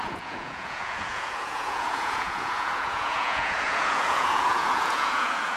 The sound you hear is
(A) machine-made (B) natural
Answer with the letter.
A